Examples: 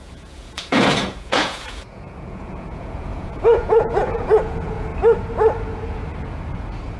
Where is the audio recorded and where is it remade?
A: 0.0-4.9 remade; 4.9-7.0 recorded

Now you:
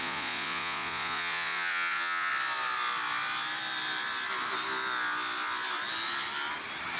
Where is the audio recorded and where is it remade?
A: 0.0-2.3 remade; 2.3-7.0 recorded